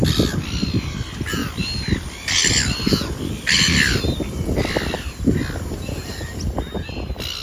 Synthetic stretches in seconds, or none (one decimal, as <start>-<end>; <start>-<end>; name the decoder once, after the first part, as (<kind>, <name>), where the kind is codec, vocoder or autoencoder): 1.4-5.2 (vocoder, BigVGAN v2)